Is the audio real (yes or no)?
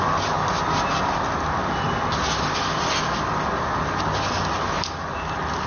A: yes